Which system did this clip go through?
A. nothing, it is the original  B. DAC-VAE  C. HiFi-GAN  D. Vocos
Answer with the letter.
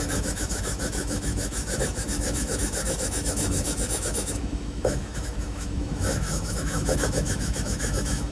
B